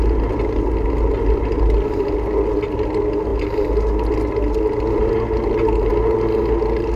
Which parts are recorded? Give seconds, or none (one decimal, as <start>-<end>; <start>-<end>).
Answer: 0.0-7.0